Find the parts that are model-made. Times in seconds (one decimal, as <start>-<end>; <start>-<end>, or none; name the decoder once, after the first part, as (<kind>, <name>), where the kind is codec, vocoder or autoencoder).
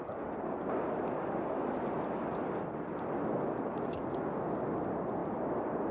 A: none